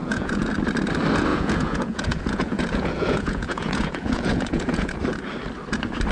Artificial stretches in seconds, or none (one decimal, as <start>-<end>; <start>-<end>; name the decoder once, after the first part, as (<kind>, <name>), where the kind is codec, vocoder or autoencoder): 0.0-0.5 (vocoder, Vocos); 1.3-5.0